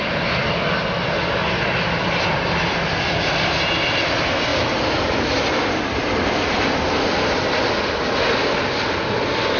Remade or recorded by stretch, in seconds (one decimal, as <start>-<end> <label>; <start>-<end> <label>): 0.0-9.6 recorded